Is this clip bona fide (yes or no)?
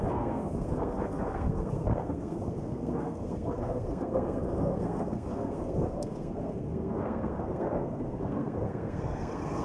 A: no